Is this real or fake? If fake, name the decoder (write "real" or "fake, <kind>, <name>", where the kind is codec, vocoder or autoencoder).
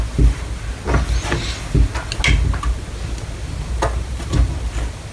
real